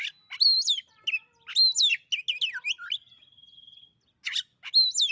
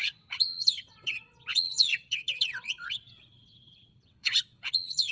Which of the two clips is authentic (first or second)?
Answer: first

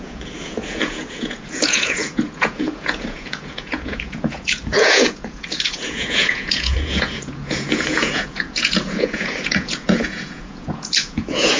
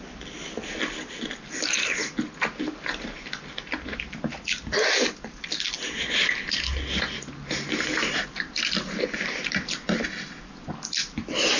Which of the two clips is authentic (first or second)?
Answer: second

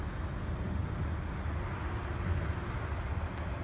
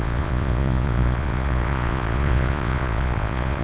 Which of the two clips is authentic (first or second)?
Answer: first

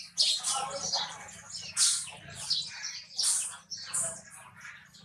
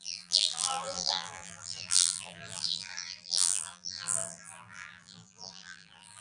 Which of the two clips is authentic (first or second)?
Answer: first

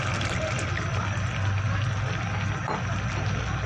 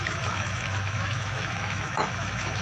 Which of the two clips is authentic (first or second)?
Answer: first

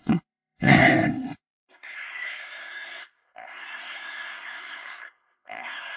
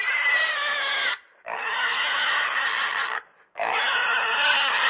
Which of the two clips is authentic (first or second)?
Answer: second